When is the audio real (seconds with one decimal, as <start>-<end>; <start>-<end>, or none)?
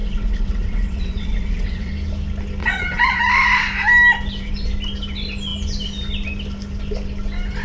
1.9-2.6; 3.2-7.6